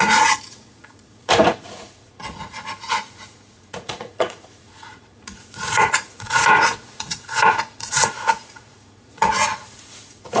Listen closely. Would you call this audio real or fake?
fake